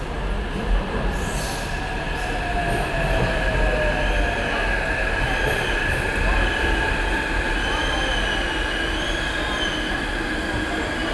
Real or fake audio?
real